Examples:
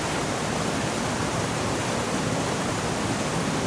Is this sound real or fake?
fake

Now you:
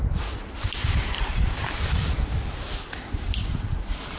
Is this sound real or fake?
fake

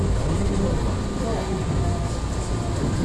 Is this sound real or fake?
real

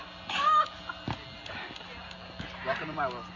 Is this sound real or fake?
real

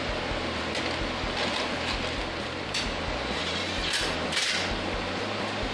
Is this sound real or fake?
real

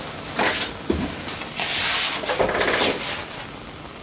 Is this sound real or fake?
real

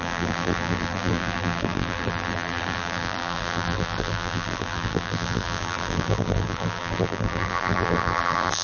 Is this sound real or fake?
fake